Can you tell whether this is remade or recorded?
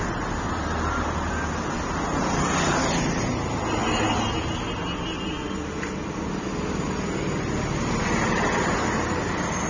recorded